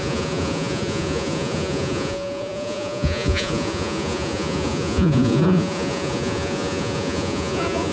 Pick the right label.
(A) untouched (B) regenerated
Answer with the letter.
B